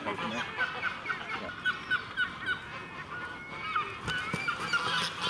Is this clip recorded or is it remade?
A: recorded